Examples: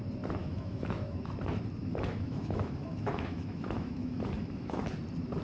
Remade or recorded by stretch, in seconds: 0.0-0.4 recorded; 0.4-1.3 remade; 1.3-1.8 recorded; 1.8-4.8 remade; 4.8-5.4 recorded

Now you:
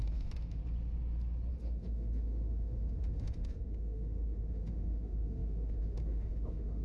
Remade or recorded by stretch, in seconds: 0.0-0.6 remade; 0.6-1.5 recorded; 1.5-6.8 remade